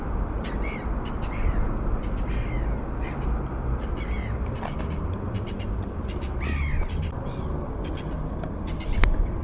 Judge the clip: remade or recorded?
recorded